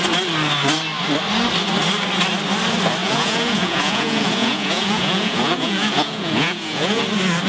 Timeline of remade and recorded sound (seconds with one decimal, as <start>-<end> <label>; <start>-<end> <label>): 0.0-3.0 recorded; 3.0-7.0 remade; 7.0-7.5 recorded